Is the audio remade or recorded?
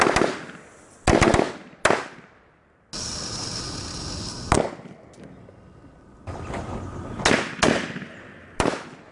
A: recorded